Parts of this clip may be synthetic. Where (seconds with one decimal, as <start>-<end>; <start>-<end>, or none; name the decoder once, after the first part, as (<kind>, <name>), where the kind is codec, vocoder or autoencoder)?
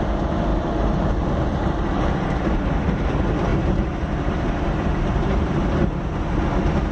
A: 0.5-2.6 (vocoder, BigVGAN v2); 3.5-5.2